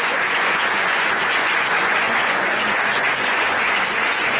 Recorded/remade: remade